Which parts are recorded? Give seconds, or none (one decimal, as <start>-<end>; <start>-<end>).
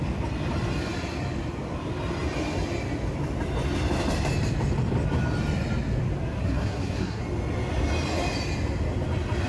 0.0-6.4; 7.2-9.5